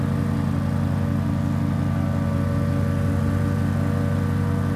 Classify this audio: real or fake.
real